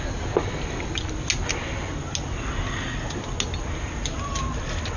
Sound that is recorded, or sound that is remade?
recorded